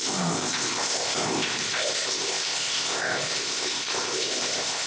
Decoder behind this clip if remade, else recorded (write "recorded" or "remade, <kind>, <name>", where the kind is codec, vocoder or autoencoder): remade, codec, ZipCodec